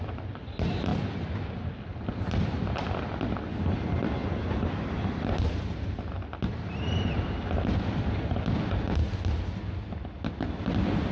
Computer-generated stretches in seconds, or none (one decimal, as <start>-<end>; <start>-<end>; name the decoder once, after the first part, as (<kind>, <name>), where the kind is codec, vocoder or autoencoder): none